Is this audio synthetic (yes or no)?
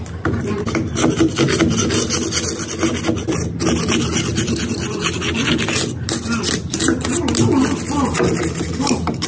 no